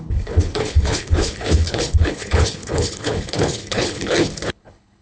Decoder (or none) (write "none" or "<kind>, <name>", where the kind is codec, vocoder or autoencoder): codec, HILCodec